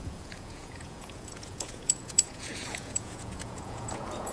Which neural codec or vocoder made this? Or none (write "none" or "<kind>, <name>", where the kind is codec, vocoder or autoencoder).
vocoder, Vocos